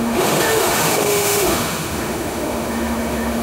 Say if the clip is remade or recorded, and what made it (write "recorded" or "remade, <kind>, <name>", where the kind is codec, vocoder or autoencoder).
remade, autoencoder, DAC-VAE